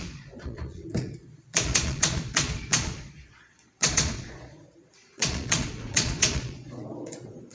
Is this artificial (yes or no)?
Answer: yes